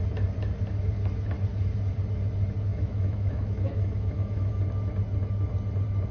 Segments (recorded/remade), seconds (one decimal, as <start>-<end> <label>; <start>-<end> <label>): 0.0-2.7 recorded; 2.7-4.6 remade; 4.6-6.1 recorded